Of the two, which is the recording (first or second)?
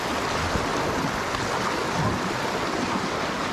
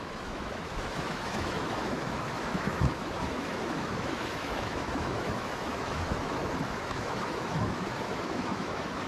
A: first